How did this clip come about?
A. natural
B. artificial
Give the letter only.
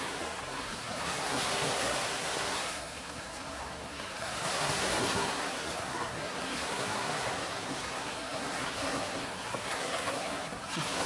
B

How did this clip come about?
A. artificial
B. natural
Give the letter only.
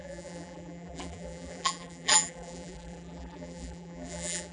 A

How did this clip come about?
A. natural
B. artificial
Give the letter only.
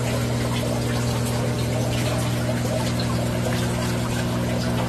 A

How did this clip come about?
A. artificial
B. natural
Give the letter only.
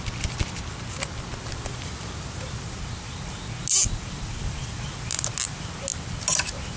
B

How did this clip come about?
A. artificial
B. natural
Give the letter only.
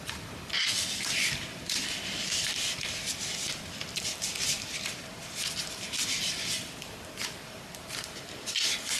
A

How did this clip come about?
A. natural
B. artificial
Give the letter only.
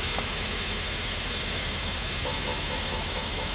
B